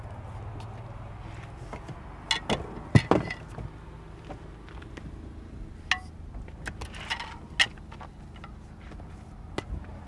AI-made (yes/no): no